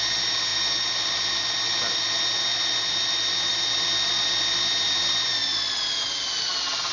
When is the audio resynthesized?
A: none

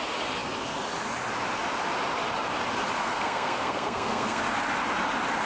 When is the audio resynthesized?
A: 3.0-4.4 (codec, SNAC)

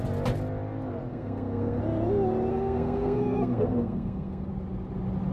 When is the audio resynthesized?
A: 1.1-1.8 (codec, SNAC); 2.5-4.5

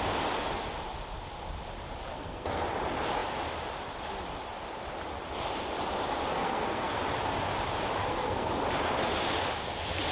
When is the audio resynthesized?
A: 2.1-2.6 (codec, SNAC); 6.3-7.0; 8.0-8.5